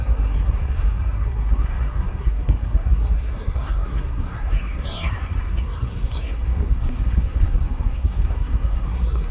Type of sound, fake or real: fake